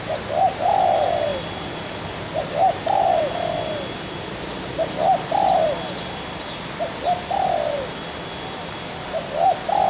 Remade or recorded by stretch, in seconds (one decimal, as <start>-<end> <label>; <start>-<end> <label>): 0.0-9.9 recorded